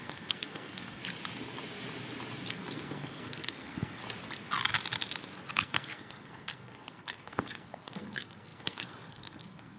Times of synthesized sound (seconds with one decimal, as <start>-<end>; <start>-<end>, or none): 0.0-1.0; 2.5-4.0; 5.5-9.8